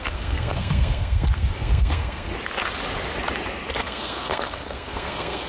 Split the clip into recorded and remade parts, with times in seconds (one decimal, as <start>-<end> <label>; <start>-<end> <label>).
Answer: 0.0-2.3 remade; 2.3-3.8 recorded; 3.8-5.5 remade